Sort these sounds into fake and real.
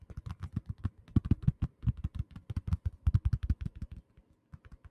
real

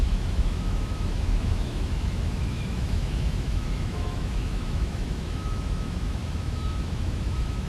fake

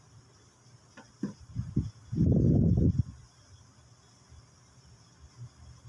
real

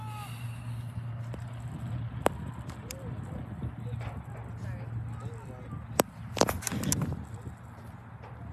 real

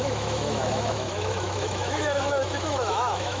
fake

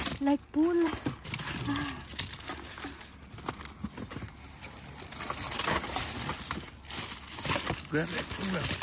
real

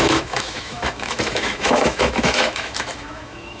fake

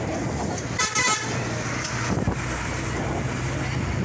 real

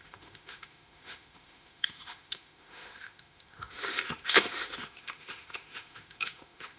fake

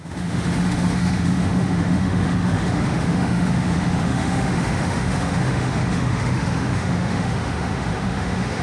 fake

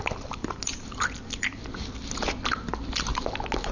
real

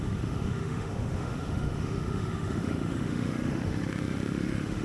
fake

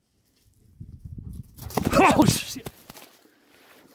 real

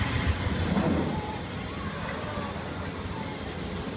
real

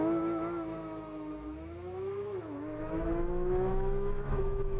fake